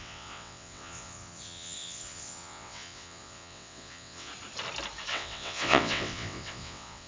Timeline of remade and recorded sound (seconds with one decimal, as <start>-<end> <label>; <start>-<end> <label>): 0.0-4.3 remade; 4.3-5.1 recorded; 5.1-7.1 remade